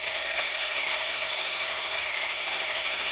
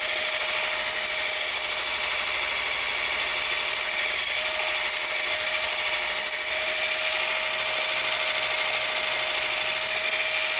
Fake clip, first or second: first